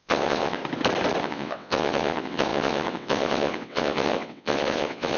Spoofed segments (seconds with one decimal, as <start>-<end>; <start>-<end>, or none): 0.0-0.6; 1.2-5.2